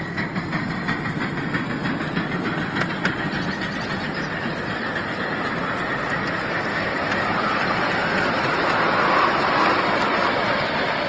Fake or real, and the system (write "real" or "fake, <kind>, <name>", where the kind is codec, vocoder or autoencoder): real